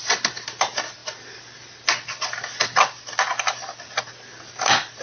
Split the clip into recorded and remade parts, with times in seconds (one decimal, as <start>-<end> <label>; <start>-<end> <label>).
0.0-5.0 recorded